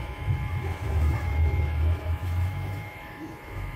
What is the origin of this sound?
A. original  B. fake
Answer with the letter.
B